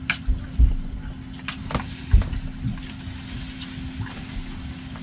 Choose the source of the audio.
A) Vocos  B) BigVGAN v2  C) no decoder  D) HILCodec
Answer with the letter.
C